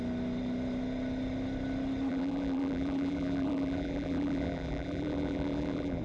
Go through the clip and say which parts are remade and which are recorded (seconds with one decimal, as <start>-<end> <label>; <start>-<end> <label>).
0.0-2.1 recorded; 2.1-6.0 remade